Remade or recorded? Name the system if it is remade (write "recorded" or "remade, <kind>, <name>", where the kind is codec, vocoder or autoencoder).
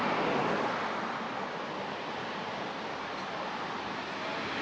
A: recorded